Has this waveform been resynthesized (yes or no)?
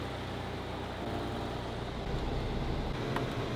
no